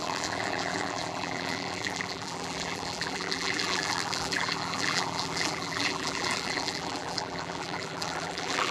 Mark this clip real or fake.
fake